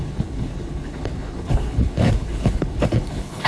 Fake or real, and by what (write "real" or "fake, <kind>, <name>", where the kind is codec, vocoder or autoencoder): fake, codec, HILCodec